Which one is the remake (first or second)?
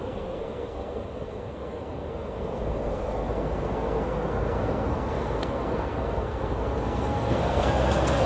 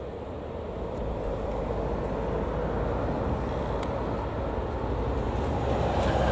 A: first